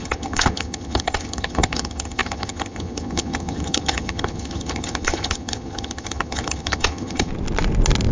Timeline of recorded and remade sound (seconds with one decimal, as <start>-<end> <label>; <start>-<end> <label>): 0.0-7.3 remade; 7.3-8.1 recorded

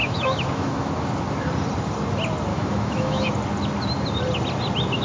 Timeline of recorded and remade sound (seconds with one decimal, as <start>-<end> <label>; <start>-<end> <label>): 0.0-0.9 remade; 0.9-2.5 recorded; 2.5-3.3 remade; 3.3-5.0 recorded

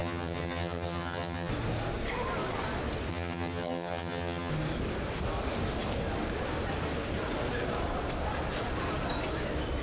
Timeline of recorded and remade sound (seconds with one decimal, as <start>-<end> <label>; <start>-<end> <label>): 0.0-1.5 remade; 1.5-3.1 recorded; 3.1-4.5 remade; 4.5-9.8 recorded

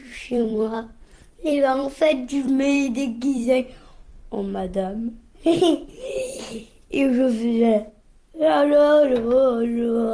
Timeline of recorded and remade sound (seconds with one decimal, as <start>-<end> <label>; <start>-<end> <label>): 0.0-3.6 remade; 3.6-10.1 recorded

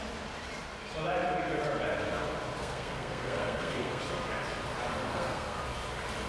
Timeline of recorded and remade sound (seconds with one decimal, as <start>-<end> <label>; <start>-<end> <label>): 0.0-2.6 recorded; 2.6-4.0 remade; 4.0-5.1 recorded; 5.1-5.6 remade; 5.6-6.3 recorded